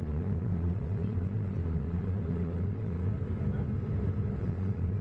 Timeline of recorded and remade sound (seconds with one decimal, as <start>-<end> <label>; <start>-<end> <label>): 0.0-3.1 remade; 3.1-4.4 recorded; 4.4-5.0 remade